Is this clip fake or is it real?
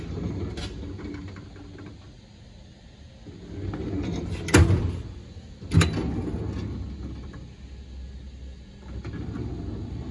real